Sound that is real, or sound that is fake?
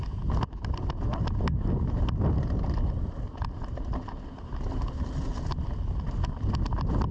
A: real